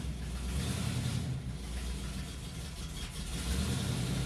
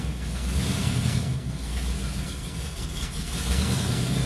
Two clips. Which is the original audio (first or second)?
first